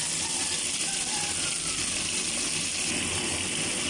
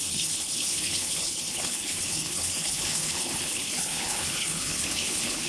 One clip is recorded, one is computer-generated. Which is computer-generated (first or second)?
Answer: second